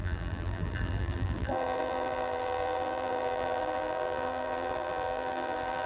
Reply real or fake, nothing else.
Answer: fake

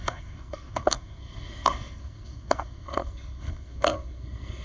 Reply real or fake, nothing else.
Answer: fake